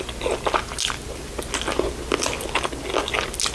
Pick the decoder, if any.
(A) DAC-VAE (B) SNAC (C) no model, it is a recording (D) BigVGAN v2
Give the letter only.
C